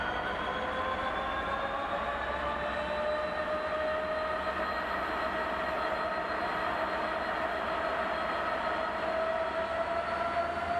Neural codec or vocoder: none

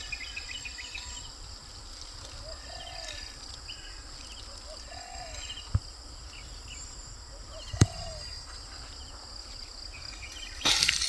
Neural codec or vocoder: none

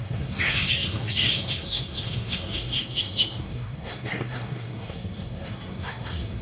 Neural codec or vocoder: codec, SNAC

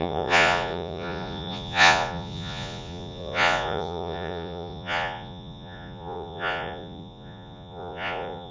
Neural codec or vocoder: vocoder, Vocos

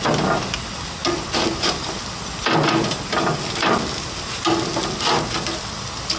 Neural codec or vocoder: none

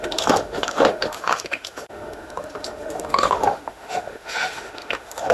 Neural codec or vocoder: autoencoder, DAC-VAE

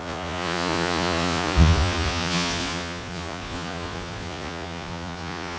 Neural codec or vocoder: vocoder, Vocos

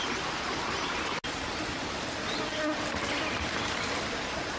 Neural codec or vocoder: none